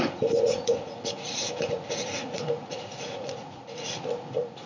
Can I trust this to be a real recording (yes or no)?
no